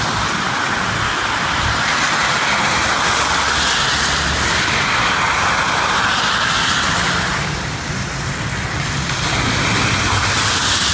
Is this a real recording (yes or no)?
yes